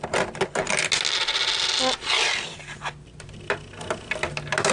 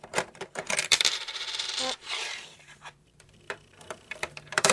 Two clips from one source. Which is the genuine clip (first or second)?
first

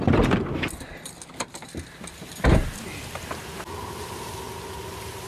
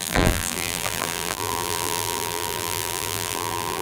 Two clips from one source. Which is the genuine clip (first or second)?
first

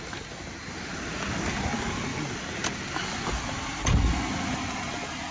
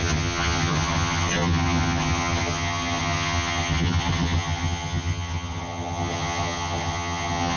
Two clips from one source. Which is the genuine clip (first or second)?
first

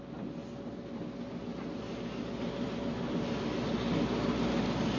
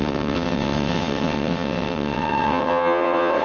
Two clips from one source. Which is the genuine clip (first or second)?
first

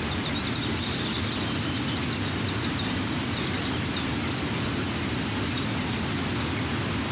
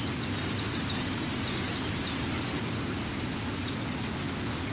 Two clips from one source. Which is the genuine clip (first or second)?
second